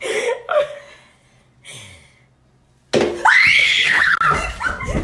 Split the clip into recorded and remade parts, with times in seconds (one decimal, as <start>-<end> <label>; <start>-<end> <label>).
0.0-3.6 recorded; 3.6-4.2 remade; 4.2-5.0 recorded